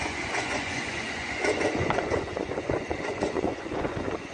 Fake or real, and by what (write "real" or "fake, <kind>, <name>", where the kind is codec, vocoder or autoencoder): fake, vocoder, Vocos